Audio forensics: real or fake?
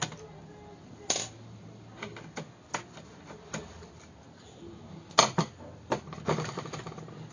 real